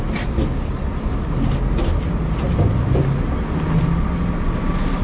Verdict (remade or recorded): recorded